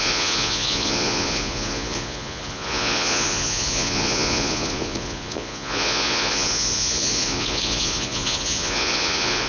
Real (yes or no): no